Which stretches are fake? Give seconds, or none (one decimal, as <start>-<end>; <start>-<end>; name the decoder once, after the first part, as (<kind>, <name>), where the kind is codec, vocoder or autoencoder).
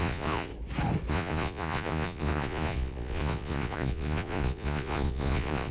0.0-0.5 (vocoder, Vocos); 1.1-5.7